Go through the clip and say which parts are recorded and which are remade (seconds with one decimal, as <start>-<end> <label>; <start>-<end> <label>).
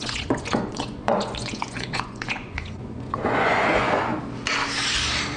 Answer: 0.0-4.1 remade; 4.1-5.4 recorded